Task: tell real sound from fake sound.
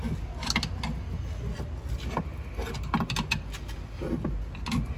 real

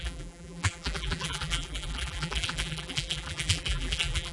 fake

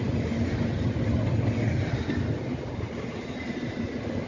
real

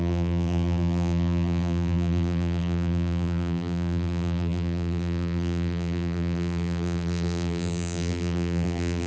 fake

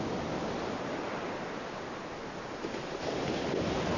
real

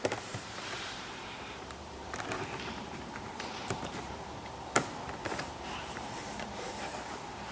fake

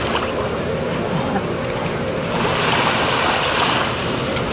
fake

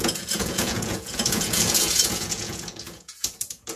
fake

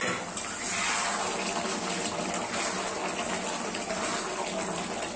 real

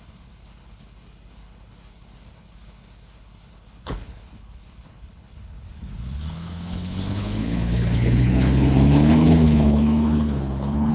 fake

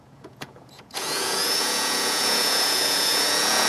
fake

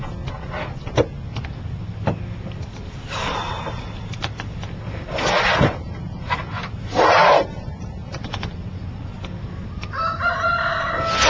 real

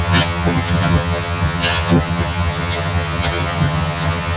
fake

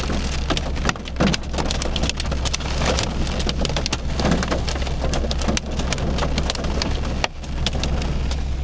real